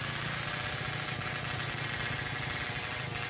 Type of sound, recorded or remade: recorded